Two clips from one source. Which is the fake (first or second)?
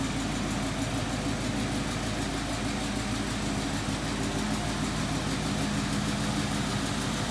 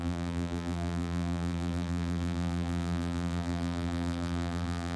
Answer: second